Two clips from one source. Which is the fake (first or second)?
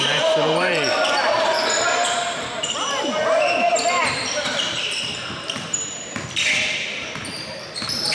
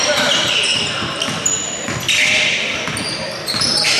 first